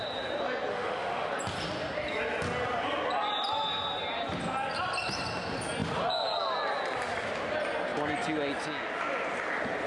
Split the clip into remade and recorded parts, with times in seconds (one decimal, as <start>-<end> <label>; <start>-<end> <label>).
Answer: 0.0-0.7 recorded; 0.7-1.3 remade; 1.3-9.9 recorded